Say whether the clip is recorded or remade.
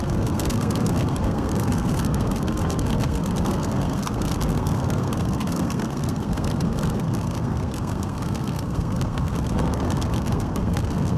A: remade